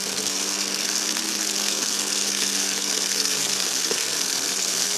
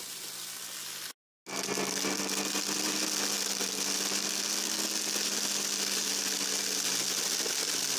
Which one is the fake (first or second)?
first